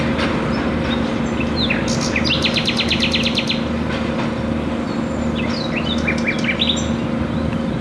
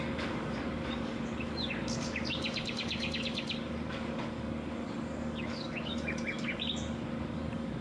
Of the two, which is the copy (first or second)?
second